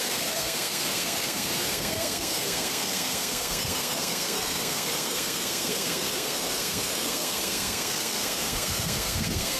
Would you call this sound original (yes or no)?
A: no